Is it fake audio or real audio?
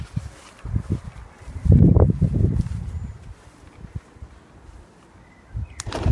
real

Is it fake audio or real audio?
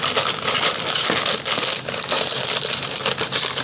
real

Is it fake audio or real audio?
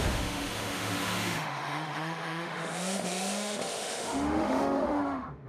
fake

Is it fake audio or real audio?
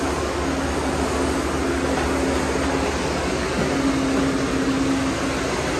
real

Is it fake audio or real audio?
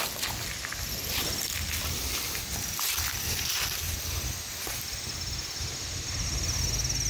real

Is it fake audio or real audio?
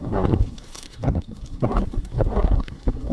fake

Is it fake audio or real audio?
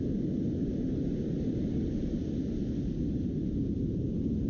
real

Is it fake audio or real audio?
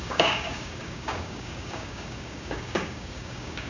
fake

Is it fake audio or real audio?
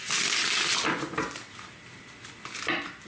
real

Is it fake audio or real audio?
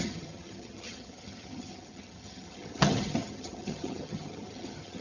fake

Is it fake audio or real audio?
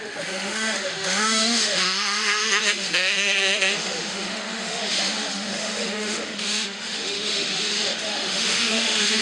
fake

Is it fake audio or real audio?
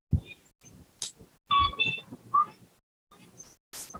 real